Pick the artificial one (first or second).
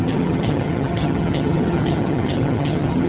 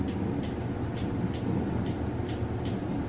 first